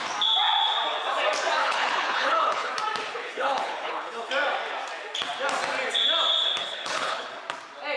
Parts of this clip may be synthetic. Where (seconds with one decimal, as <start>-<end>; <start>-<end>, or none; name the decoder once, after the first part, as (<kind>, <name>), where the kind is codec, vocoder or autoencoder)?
1.6-2.7 (codec, HILCodec); 3.1-4.3; 6.6-7.4